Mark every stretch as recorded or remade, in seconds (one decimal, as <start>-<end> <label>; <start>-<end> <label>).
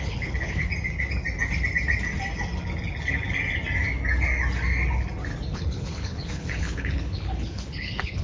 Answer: 0.0-0.7 remade; 0.7-5.5 recorded; 5.5-8.2 remade